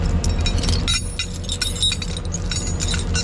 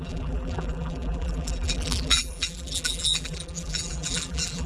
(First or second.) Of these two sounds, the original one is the first